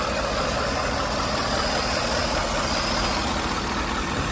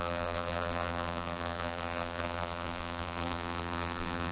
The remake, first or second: second